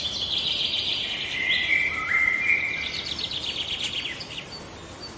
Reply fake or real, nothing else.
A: real